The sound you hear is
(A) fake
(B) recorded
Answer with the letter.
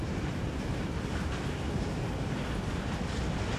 B